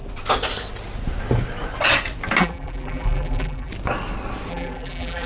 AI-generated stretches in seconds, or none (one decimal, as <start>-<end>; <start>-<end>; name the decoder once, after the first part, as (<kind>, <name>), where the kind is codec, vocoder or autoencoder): 2.4-3.7 (vocoder, BigVGAN v2); 4.5-5.3